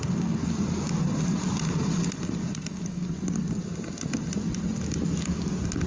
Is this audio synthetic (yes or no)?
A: no